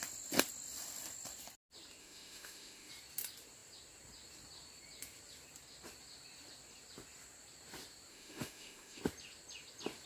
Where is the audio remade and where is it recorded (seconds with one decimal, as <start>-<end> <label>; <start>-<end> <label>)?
0.0-2.0 recorded; 2.0-2.9 remade; 2.9-8.1 recorded; 8.1-9.0 remade; 9.0-10.1 recorded